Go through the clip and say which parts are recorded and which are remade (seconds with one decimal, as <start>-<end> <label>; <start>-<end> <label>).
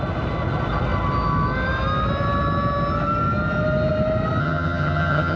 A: 0.0-4.4 recorded; 4.4-5.4 remade